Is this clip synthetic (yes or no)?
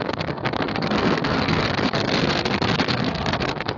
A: yes